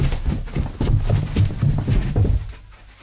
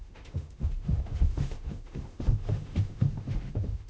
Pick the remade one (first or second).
second